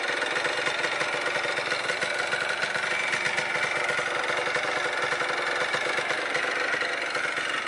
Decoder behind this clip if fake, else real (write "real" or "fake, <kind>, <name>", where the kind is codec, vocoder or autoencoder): real